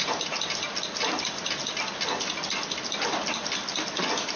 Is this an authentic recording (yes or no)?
yes